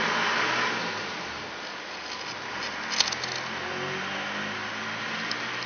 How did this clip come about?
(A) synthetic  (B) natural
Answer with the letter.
B